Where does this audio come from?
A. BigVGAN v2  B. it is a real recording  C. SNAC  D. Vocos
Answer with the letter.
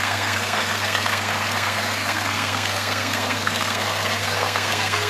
C